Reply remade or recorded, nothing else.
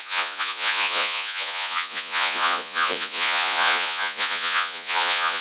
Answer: remade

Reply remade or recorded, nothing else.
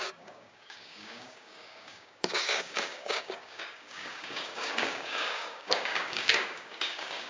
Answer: remade